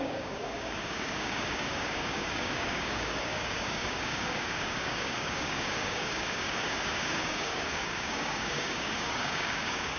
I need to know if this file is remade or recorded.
remade